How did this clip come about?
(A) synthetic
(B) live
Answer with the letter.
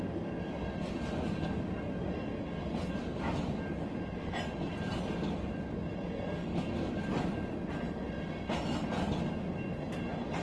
B